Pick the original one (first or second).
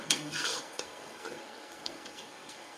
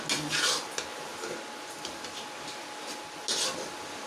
second